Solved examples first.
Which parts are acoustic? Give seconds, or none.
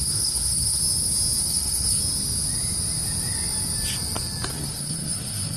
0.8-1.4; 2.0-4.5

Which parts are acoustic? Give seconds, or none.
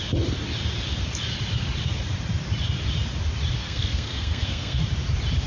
0.0-3.6; 4.8-5.5